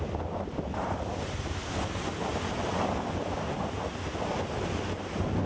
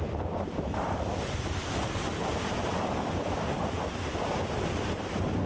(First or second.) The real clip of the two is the first